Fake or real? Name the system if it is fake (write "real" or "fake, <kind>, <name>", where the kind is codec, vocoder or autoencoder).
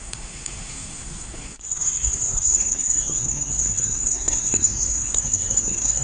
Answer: fake, codec, SNAC